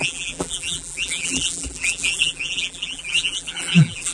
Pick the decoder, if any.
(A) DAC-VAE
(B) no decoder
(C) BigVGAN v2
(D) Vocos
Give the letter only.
C